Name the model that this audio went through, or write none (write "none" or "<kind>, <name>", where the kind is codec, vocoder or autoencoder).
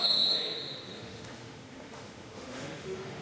autoencoder, DAC-VAE